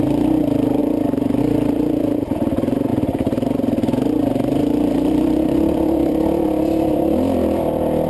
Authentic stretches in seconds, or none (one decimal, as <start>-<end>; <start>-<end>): none